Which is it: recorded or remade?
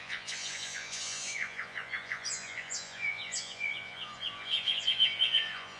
remade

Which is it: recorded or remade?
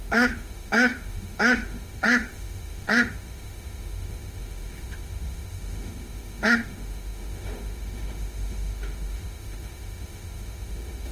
remade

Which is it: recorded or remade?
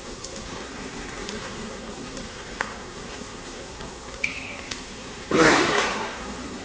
remade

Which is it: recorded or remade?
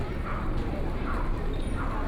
remade